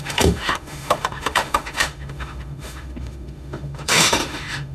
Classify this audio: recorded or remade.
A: remade